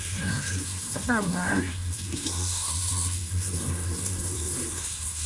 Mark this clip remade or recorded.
remade